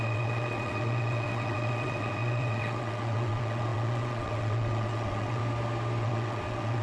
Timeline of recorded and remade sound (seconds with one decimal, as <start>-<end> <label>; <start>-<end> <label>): 0.0-5.4 remade; 5.4-6.0 recorded; 6.0-6.8 remade